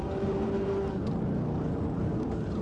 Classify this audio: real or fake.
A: real